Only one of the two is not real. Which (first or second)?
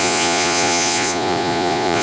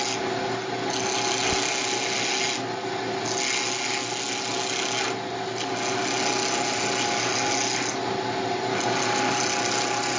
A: first